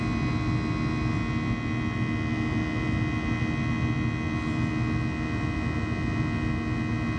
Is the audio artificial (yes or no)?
no